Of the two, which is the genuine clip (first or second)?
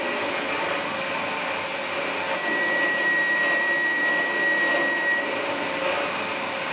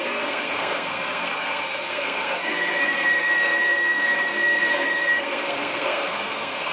first